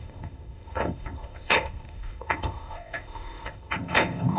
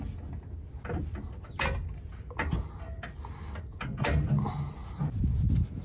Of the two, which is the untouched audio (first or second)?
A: second